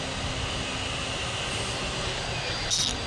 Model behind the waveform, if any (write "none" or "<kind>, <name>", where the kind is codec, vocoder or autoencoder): none